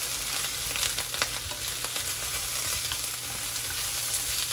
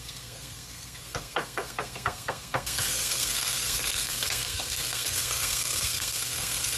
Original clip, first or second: first